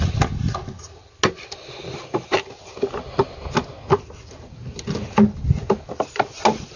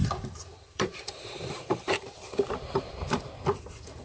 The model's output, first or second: second